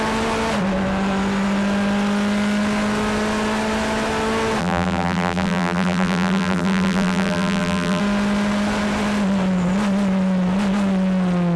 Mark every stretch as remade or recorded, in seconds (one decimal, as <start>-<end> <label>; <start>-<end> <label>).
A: 0.0-4.6 recorded; 4.6-8.0 remade; 8.0-11.6 recorded